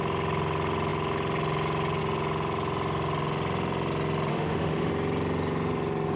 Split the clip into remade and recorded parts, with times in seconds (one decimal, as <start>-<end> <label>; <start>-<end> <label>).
0.0-4.3 recorded; 4.3-4.9 remade; 4.9-6.2 recorded